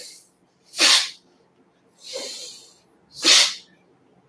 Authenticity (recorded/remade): recorded